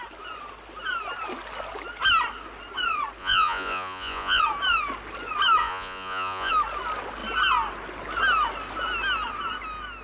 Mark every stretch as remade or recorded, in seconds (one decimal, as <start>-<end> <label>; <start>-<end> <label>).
0.0-3.2 recorded; 3.2-4.4 remade; 4.4-5.6 recorded; 5.6-6.5 remade; 6.5-10.0 recorded